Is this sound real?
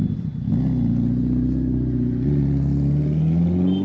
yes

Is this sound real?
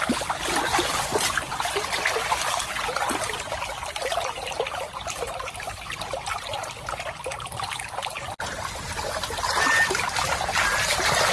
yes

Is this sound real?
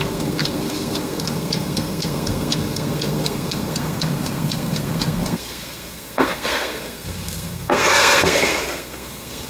no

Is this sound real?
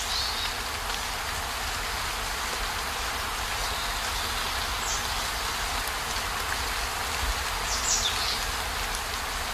yes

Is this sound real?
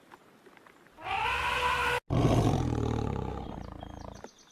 yes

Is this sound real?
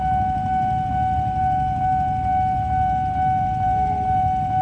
yes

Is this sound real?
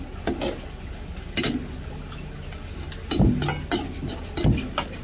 yes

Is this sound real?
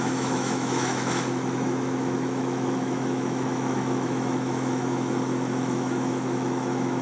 no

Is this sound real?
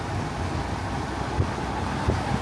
yes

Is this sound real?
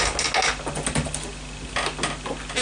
yes